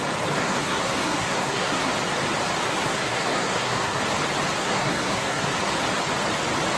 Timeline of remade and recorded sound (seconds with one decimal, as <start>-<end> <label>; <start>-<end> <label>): 0.0-0.4 recorded; 0.4-1.9 remade; 1.9-2.7 recorded; 2.7-4.0 remade; 4.0-4.6 recorded; 4.6-5.4 remade; 5.4-6.8 recorded